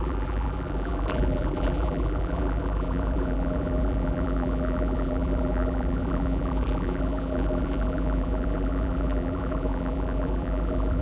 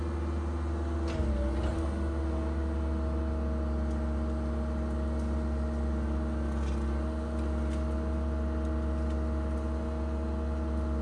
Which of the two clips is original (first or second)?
second